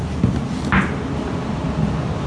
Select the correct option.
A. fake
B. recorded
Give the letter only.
B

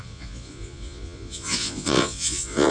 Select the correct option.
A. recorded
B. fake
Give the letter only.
B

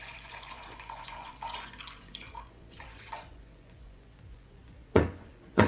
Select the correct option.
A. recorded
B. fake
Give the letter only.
B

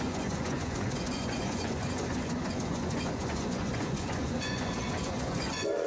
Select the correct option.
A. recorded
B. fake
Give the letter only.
B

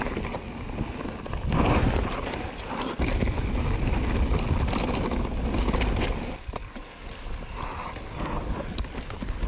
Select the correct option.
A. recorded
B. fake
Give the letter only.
A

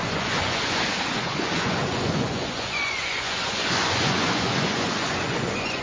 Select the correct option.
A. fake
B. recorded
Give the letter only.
A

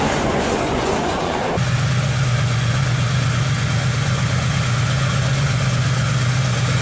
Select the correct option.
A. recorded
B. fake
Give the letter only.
B